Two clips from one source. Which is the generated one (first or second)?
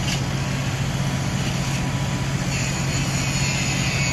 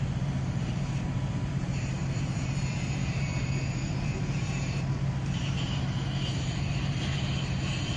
second